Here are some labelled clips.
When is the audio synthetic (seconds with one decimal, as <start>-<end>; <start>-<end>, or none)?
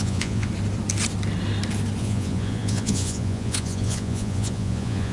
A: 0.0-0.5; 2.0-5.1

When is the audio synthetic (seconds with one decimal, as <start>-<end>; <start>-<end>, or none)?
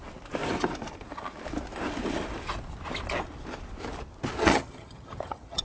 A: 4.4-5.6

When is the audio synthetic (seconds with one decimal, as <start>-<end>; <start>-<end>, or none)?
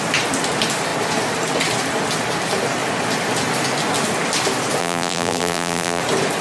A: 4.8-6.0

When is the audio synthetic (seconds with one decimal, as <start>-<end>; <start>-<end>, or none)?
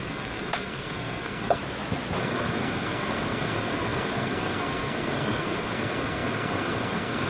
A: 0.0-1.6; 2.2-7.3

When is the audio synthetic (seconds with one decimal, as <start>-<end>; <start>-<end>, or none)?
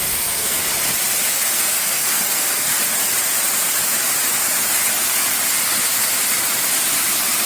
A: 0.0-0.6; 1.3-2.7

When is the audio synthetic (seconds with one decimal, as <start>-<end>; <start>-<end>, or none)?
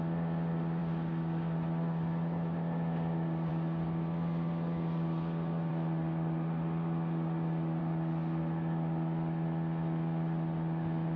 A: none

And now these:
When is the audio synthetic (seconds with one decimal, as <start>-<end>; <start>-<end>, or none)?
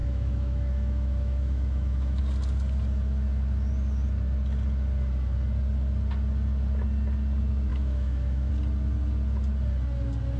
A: 0.0-2.2; 7.7-8.5